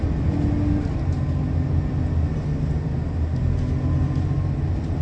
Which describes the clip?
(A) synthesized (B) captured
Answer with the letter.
B